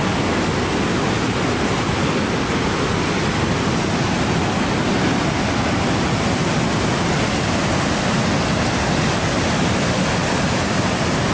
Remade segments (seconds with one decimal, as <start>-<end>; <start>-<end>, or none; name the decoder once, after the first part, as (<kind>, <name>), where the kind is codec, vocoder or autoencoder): none